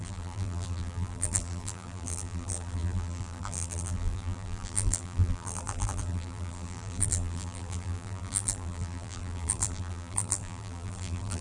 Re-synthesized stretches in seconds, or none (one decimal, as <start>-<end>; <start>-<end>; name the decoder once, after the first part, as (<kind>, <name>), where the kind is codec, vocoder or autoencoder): 0.0-11.4 (vocoder, BigVGAN v2)